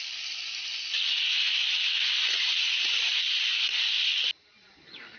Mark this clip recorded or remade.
recorded